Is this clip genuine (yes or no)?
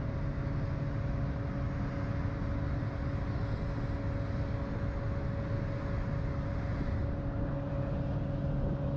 yes